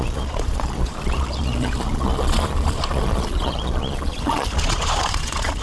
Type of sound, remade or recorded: remade